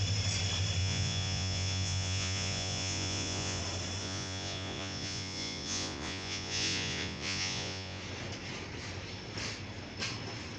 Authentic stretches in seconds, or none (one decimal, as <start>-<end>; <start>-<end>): 0.0-0.8; 3.6-4.0; 8.0-10.6